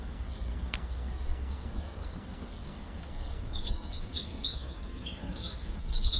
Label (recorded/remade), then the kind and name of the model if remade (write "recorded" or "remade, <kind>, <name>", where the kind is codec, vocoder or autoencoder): remade, codec, SNAC